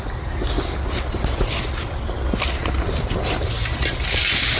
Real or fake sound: real